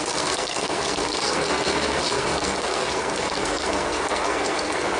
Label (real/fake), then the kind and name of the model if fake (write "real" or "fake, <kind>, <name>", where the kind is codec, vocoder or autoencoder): fake, codec, SNAC